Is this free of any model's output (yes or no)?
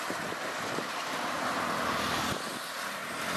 yes